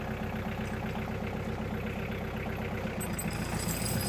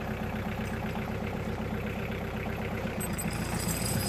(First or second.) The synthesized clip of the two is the second